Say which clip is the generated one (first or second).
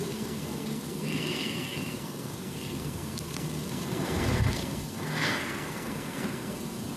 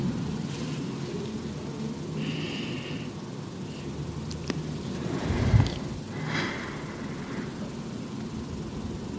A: first